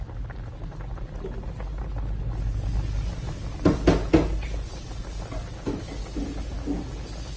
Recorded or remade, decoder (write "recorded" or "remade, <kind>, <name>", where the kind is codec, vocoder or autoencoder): recorded